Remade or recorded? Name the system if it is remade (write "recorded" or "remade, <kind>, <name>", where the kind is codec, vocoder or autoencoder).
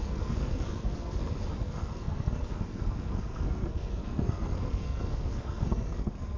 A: remade, codec, SNAC